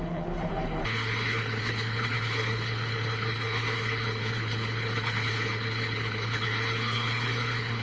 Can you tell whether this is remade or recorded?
remade